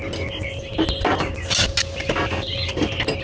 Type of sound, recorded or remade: recorded